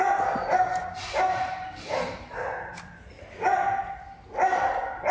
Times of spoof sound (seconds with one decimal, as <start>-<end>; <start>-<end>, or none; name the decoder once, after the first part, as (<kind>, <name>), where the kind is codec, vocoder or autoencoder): none